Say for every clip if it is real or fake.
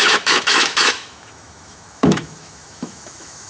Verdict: fake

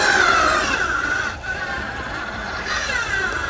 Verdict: real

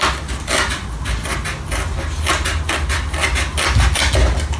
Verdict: real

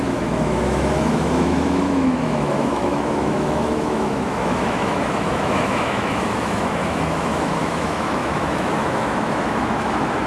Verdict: fake